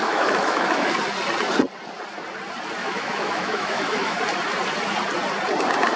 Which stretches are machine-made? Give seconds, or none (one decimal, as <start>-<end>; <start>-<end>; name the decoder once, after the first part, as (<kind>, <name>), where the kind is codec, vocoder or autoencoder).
0.0-0.9 (autoencoder, DAC-VAE); 2.8-4.2